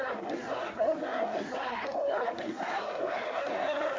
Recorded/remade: remade